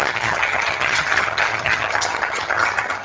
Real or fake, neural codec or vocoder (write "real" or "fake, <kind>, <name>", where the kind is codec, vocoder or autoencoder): fake, vocoder, HiFi-GAN